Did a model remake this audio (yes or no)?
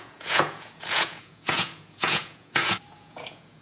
yes